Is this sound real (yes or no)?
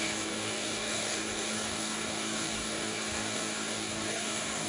no